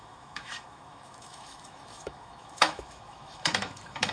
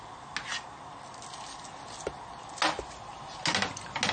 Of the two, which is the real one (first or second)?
second